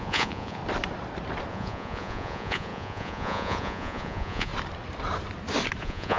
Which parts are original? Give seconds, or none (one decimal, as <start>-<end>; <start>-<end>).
0.6-1.5; 4.5-5.8